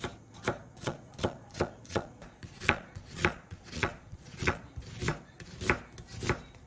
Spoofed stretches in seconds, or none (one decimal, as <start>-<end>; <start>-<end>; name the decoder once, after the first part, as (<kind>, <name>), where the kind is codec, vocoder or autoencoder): 0.6-4.6 (vocoder, Vocos)

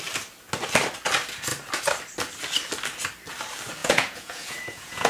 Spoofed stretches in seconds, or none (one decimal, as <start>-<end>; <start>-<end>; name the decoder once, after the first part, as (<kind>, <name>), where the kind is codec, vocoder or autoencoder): 3.8-5.1 (vocoder, Vocos)

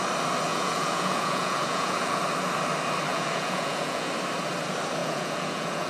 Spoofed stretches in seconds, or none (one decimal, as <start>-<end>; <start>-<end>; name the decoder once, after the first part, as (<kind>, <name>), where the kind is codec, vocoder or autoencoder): 0.5-2.2 (vocoder, Vocos); 3.1-4.1; 5.0-5.9

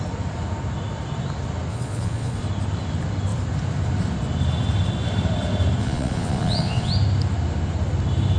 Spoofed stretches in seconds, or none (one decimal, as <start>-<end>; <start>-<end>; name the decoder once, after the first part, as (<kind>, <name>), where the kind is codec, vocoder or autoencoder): 1.7-2.4 (vocoder, Vocos); 5.8-6.9